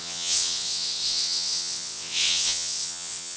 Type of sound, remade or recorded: remade